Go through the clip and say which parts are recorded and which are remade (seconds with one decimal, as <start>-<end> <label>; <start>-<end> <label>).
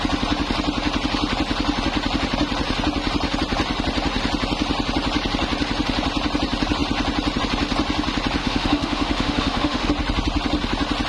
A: 0.0-8.4 recorded; 8.4-9.9 remade; 9.9-11.1 recorded